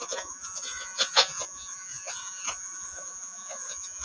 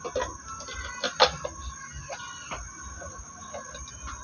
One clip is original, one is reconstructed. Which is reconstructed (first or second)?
first